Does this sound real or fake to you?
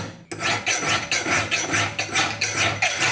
real